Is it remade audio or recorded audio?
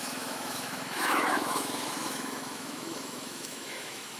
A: remade